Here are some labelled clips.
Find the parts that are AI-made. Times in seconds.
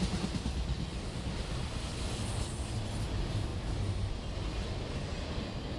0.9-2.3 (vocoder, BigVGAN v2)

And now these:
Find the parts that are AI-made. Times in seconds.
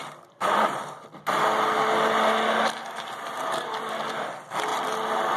0.0-0.6 (vocoder, BigVGAN v2)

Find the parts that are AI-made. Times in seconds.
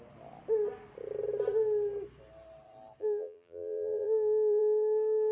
3.0-4.6 (vocoder, BigVGAN v2)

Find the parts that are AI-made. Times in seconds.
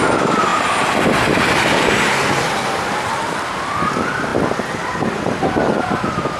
none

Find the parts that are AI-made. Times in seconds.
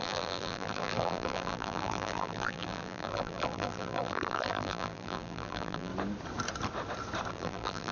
0.0-5.9 (vocoder, BigVGAN v2); 7.3-7.9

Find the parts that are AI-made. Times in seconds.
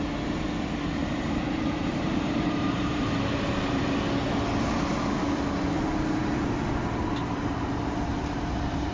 1.0-4.1 (vocoder, BigVGAN v2); 7.2-8.9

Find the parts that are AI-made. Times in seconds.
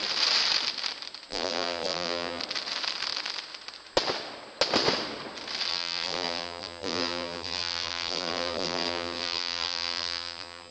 1.3-2.4 (vocoder, BigVGAN v2); 5.7-10.7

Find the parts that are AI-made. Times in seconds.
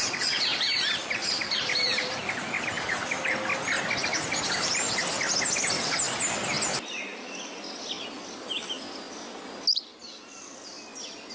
1.2-2.5 (vocoder, BigVGAN v2); 4.0-5.0